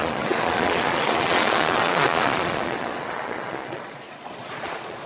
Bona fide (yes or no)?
no